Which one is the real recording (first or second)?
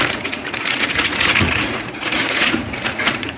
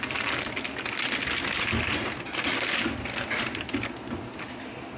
second